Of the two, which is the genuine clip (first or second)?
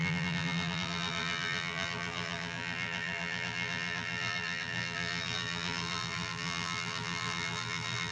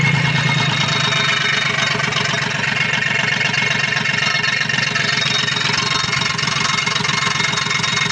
second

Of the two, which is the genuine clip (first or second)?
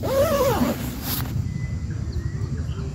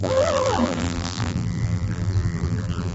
first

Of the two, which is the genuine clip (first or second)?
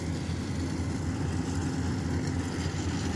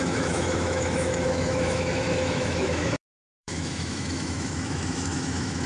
first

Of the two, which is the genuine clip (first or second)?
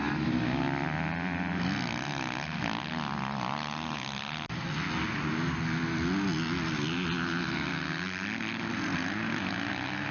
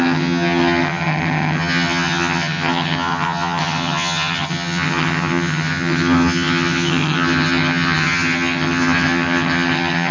first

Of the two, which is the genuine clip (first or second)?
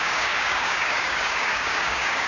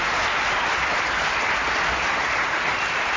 second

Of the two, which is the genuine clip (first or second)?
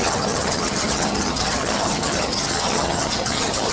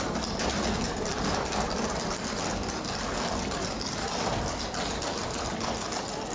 second